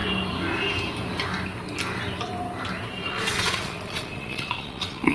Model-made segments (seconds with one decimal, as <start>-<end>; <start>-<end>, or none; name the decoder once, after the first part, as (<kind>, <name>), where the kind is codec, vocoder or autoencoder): 3.1-5.1 (vocoder, Vocos)